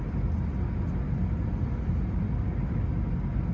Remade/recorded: recorded